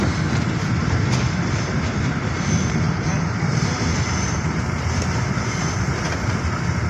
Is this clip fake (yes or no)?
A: yes